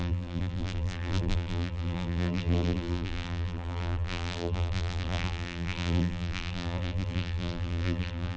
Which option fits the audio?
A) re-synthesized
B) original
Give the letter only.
A